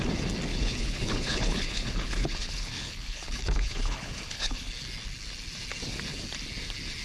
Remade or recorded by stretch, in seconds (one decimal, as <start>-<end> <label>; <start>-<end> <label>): 0.0-0.5 recorded; 0.5-4.7 remade; 4.7-7.0 recorded